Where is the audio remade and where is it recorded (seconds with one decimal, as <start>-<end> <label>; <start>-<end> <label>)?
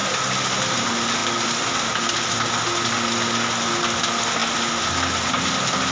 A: 0.0-5.9 recorded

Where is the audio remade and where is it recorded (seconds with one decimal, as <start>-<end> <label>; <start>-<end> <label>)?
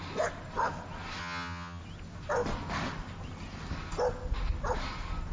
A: 0.0-1.2 recorded; 1.2-1.8 remade; 1.8-5.3 recorded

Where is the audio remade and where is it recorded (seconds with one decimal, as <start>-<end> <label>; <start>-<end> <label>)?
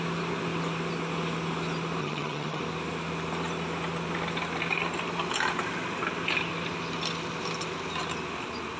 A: 0.0-2.0 recorded; 2.0-2.6 remade; 2.6-8.8 recorded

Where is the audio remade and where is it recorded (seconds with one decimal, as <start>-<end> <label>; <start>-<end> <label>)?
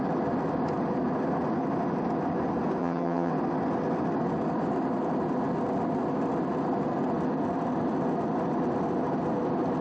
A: 0.0-2.8 recorded; 2.8-3.3 remade; 3.3-9.8 recorded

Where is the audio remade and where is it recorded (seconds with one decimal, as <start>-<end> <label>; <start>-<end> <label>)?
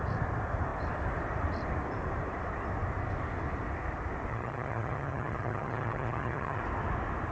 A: 0.0-4.3 recorded; 4.3-6.6 remade; 6.6-7.3 recorded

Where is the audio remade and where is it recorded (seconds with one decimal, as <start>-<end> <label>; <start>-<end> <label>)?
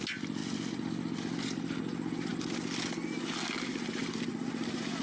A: 0.0-5.0 recorded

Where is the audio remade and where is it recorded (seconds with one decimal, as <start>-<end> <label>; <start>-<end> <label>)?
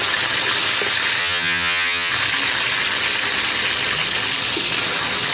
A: 0.0-1.2 recorded; 1.2-2.1 remade; 2.1-5.3 recorded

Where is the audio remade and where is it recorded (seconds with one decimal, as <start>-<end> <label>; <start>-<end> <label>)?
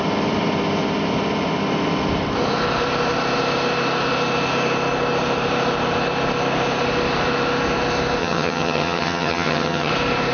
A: 0.0-8.2 recorded; 8.2-9.9 remade; 9.9-10.3 recorded